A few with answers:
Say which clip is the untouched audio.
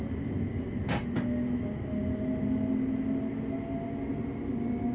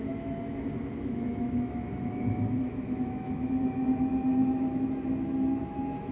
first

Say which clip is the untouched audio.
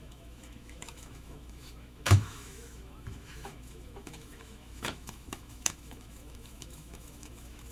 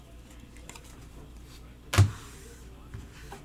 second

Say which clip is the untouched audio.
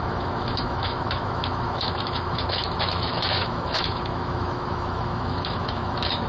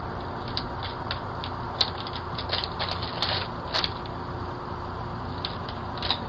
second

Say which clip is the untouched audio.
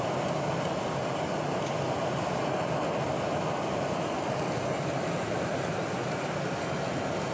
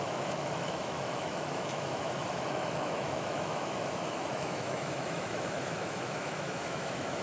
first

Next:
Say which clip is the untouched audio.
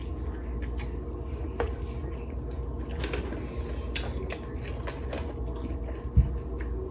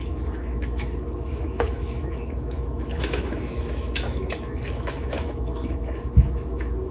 first